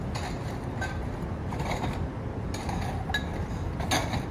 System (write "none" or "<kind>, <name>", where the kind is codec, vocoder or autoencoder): none